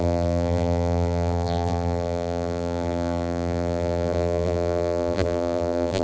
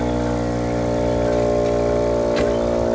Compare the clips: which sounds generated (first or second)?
first